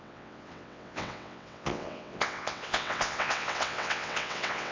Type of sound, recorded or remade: remade